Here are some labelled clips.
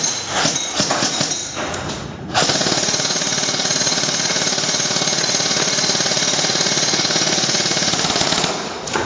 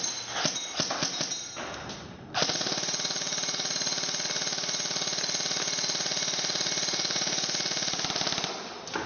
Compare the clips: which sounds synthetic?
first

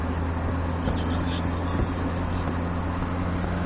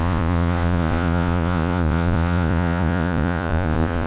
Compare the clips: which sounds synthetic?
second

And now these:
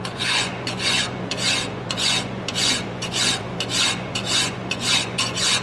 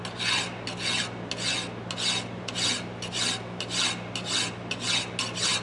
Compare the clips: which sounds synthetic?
first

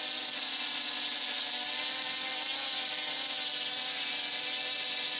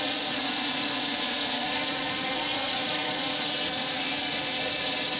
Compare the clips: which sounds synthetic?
second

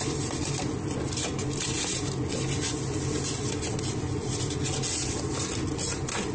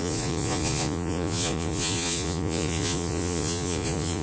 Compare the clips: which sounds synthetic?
second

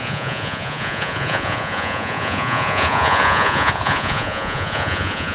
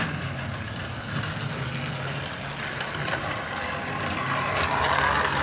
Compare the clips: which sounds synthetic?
first